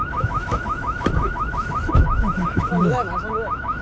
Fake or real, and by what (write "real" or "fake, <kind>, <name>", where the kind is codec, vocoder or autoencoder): fake, autoencoder, DAC-VAE